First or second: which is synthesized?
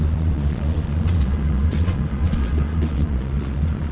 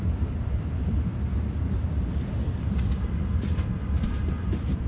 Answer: first